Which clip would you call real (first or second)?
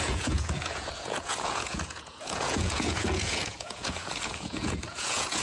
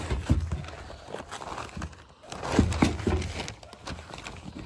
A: second